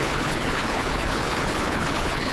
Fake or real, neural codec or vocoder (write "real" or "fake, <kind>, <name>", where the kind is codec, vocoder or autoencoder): fake, codec, HILCodec